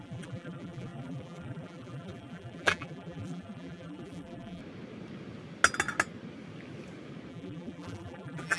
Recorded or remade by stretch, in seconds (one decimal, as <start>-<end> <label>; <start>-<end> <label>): 0.0-4.6 remade; 4.6-7.3 recorded; 7.3-8.6 remade